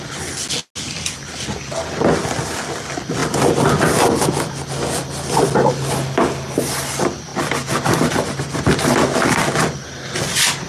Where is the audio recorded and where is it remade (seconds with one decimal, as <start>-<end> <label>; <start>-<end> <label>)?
0.0-10.7 recorded